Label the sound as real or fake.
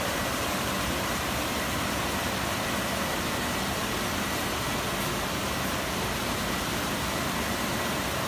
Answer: real